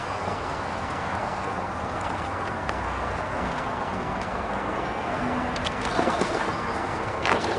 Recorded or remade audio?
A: remade